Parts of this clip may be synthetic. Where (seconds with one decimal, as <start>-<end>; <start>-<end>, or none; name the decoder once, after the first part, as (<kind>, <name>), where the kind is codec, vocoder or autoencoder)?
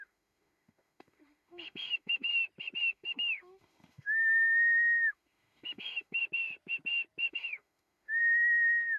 0.0-2.3 (autoencoder, DAC-VAE); 2.9-6.2; 7.3-8.2